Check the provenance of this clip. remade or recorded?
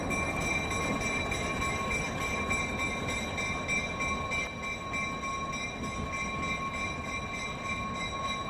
recorded